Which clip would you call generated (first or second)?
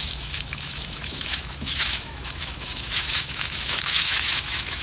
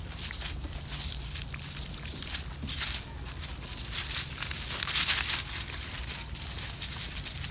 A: first